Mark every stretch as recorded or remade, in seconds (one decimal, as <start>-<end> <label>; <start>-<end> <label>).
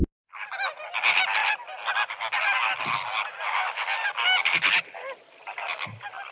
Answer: 0.0-6.3 recorded